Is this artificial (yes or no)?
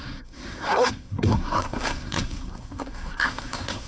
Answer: yes